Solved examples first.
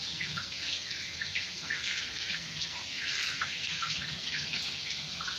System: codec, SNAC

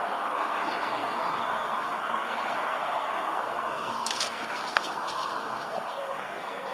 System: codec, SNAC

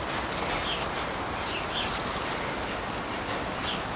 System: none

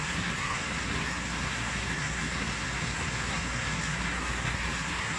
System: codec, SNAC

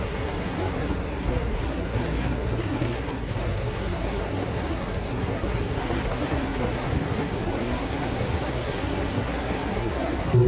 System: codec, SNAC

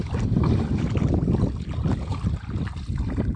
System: none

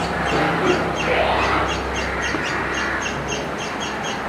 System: none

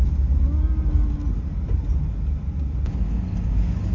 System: none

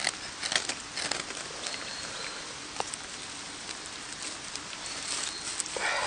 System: none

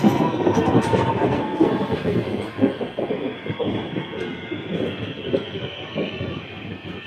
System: codec, SNAC